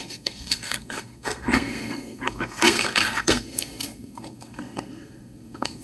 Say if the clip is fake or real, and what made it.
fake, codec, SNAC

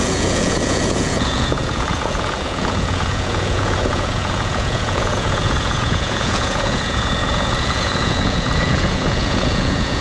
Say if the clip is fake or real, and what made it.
fake, vocoder, Vocos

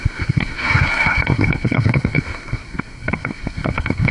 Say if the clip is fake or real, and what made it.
fake, codec, SNAC